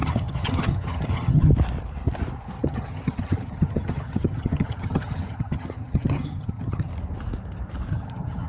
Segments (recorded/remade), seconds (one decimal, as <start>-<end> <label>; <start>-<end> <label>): 0.0-1.5 remade; 1.5-2.6 recorded; 2.6-6.9 remade; 6.9-7.9 recorded; 7.9-8.5 remade